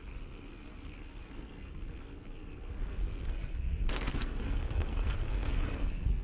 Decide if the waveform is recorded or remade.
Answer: remade